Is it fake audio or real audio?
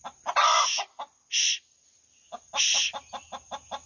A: real